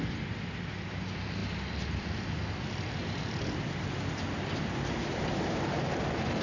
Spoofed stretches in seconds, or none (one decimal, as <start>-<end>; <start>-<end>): 1.4-5.2